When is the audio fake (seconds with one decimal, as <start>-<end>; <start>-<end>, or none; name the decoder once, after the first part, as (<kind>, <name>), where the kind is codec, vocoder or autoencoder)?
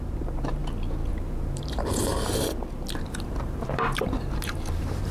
0.0-0.6 (vocoder, BigVGAN v2); 1.1-2.1; 3.0-5.1